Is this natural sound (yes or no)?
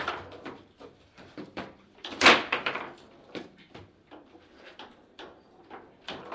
no